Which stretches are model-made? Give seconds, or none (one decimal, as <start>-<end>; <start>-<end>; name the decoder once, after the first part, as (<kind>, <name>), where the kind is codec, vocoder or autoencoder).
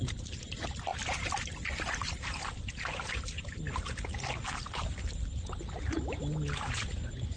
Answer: none